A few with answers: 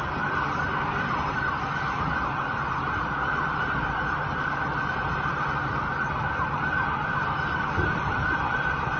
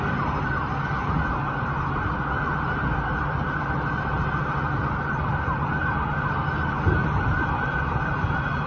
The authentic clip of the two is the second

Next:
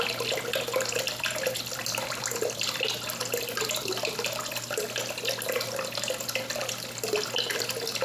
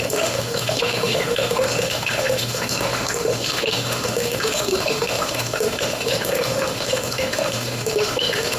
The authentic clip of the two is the first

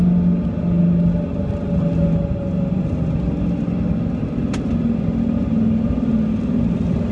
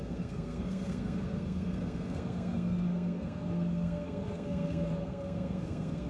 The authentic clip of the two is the first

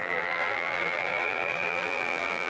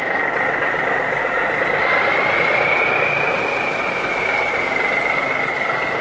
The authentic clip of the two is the second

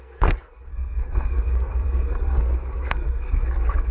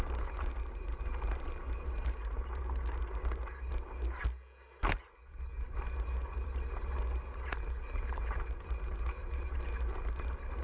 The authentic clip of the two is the second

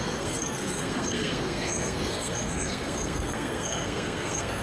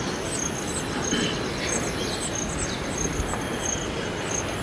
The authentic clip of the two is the second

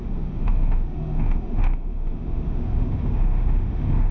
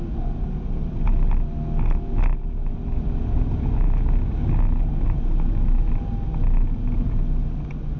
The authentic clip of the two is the second